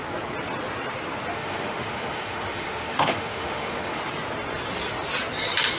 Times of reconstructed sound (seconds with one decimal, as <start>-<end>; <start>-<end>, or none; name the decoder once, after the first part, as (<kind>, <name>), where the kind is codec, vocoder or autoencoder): 1.3-4.0 (autoencoder, DAC-VAE)